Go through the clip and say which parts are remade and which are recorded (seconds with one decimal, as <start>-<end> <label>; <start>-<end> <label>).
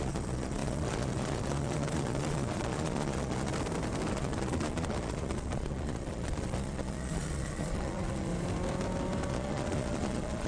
0.0-3.5 remade; 3.5-4.1 recorded; 4.1-8.3 remade; 8.3-9.3 recorded; 9.3-10.5 remade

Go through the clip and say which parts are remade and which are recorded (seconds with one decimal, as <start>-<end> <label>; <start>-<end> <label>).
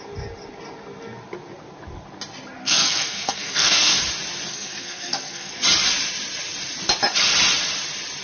0.0-2.6 recorded; 2.6-4.0 remade; 4.0-4.5 recorded; 4.5-5.5 remade; 5.5-8.2 recorded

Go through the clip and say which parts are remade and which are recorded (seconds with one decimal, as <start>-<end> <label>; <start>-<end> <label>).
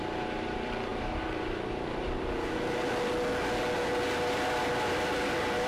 0.0-0.9 remade; 0.9-4.3 recorded; 4.3-5.7 remade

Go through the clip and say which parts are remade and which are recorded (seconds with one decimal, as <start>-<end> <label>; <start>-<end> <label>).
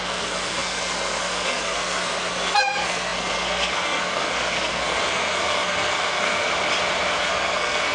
0.0-6.5 remade; 6.5-7.2 recorded; 7.2-7.9 remade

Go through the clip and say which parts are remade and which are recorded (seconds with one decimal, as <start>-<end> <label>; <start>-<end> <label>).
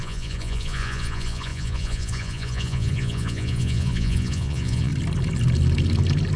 0.0-4.9 remade; 4.9-6.4 recorded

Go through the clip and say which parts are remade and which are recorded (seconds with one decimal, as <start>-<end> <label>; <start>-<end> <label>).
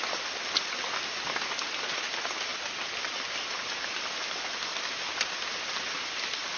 0.0-6.6 recorded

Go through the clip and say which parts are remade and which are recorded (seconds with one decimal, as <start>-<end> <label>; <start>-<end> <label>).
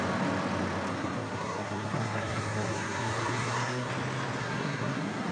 0.0-0.9 recorded; 0.9-3.9 remade; 3.9-4.4 recorded; 4.4-5.3 remade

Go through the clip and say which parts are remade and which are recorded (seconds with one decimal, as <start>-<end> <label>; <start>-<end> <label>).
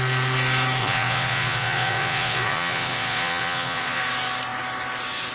0.0-0.8 recorded; 0.8-4.0 remade; 4.0-5.3 recorded